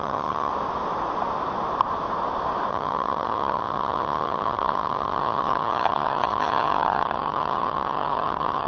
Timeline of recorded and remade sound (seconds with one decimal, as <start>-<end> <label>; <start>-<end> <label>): 0.0-0.5 remade; 0.5-2.7 recorded; 2.7-8.7 remade